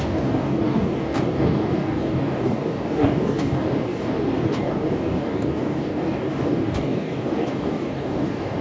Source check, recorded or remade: remade